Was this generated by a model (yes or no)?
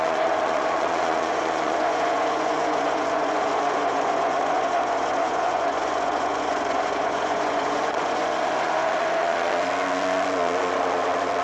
yes